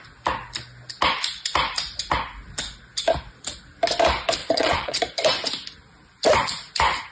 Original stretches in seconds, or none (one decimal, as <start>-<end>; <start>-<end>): 0.0-4.4; 5.0-7.1